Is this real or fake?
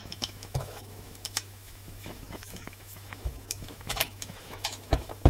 fake